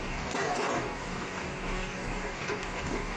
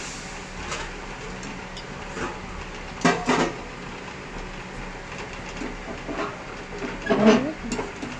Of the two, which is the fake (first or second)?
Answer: first